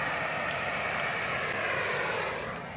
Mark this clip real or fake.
real